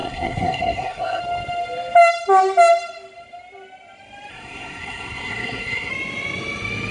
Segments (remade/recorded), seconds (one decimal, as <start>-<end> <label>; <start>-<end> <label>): 0.0-1.2 remade; 1.2-4.3 recorded; 4.3-5.9 remade; 5.9-6.9 recorded